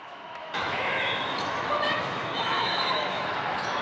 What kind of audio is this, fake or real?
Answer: fake